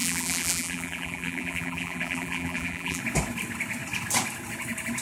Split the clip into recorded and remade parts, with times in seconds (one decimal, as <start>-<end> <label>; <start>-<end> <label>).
0.0-3.0 remade; 3.0-5.0 recorded